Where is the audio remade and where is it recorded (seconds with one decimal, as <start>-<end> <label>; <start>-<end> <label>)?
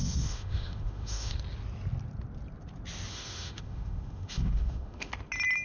0.0-1.4 remade; 1.4-3.1 recorded; 3.1-5.1 remade; 5.1-5.6 recorded